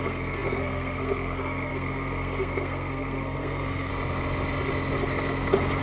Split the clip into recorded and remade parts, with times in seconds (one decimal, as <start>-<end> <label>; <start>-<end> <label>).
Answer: 0.0-3.9 remade; 3.9-5.8 recorded